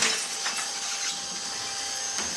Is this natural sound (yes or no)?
yes